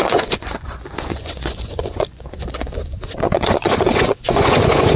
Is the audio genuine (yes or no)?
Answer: no